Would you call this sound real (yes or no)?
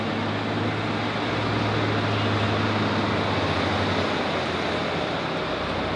yes